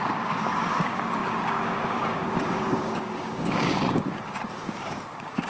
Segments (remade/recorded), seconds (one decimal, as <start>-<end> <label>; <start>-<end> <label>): 0.0-5.5 remade